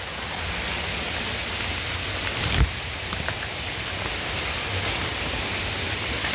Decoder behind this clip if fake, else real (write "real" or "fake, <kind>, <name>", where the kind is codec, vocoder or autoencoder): real